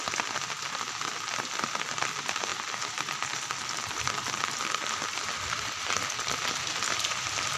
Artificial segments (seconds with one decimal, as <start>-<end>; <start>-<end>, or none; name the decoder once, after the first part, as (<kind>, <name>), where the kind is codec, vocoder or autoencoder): 0.0-2.5 (vocoder, BigVGAN v2); 3.4-7.6

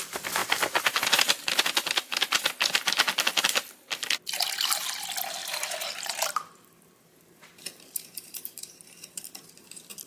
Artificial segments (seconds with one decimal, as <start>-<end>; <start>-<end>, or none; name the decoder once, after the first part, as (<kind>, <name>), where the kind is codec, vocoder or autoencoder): 5.4-9.5 (vocoder, BigVGAN v2)

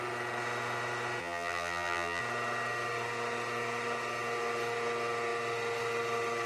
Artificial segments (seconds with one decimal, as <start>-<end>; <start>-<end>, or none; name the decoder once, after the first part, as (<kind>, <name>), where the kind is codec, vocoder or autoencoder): 1.2-2.2 (vocoder, BigVGAN v2)

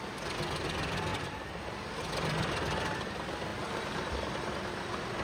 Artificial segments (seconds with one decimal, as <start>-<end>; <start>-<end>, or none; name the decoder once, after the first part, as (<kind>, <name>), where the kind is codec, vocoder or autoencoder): 1.1-1.9 (vocoder, BigVGAN v2); 3.5-4.5

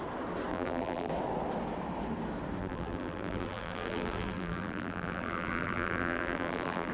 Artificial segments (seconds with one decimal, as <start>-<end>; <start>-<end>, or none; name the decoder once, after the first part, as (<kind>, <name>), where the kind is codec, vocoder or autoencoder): 0.5-1.1 (vocoder, BigVGAN v2); 2.6-6.9

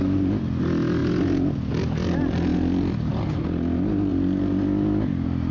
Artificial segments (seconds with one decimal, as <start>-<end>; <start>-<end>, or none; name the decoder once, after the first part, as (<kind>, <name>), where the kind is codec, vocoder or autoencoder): none